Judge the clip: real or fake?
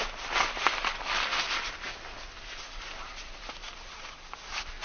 real